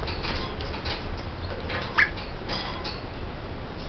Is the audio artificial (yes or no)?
no